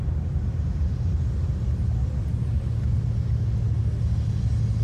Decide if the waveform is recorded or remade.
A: recorded